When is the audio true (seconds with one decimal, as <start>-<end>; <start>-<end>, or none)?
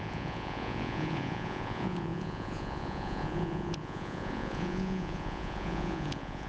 none